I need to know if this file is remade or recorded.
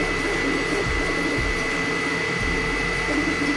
recorded